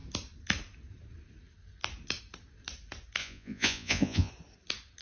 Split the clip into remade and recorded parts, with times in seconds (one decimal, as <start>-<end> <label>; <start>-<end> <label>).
0.0-3.2 recorded; 3.2-4.3 remade; 4.3-5.0 recorded